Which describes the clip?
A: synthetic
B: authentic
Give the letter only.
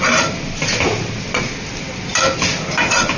B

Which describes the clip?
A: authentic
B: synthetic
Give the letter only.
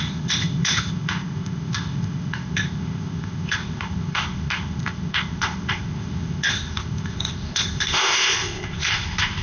B